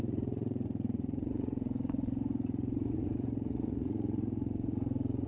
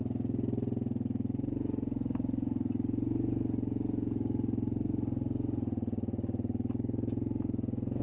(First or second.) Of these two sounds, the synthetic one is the first